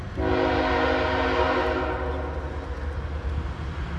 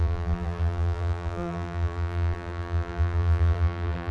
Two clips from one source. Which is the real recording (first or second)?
first